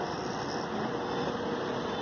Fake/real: real